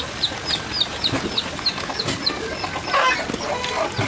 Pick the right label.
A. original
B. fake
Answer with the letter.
A